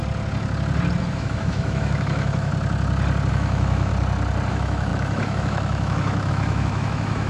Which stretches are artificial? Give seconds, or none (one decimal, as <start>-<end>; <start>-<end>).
1.0-2.5; 3.3-3.9; 4.5-7.3